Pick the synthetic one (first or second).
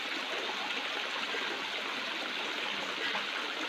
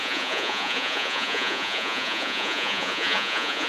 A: second